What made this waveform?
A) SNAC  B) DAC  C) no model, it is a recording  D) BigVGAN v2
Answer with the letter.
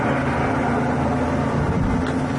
C